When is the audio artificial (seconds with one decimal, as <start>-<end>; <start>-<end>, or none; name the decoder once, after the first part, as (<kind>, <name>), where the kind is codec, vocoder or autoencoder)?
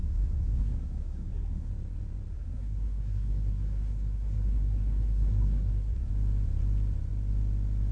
0.0-1.7 (codec, SNAC); 2.3-6.1